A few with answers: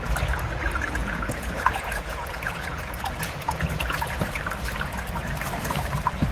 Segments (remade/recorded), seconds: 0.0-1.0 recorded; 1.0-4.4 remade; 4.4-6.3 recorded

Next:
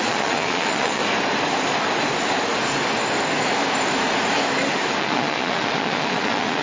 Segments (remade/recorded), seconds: 0.0-1.0 remade; 1.0-5.0 recorded; 5.0-6.6 remade

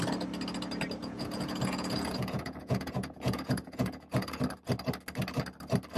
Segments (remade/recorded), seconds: 0.0-1.0 recorded; 1.0-4.4 remade; 4.4-6.0 recorded

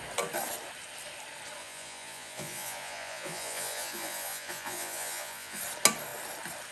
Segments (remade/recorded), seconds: 0.0-1.6 recorded; 1.6-5.6 remade; 5.6-6.7 recorded

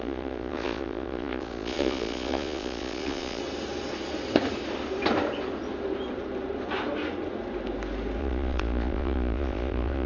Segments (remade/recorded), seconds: 0.0-3.4 remade; 3.4-8.2 recorded; 8.2-10.1 remade

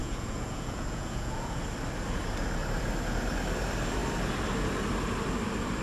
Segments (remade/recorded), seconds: 0.0-1.6 remade; 1.6-5.8 recorded